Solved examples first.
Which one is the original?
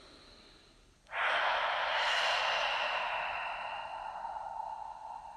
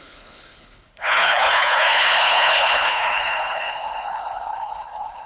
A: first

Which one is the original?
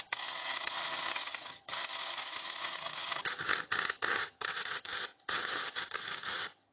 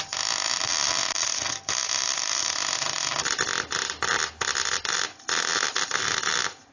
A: second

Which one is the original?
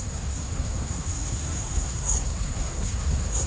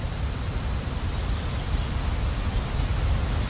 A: second